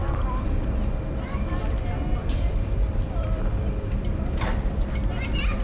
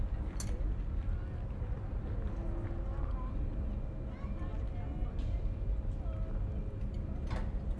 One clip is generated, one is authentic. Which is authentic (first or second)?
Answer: second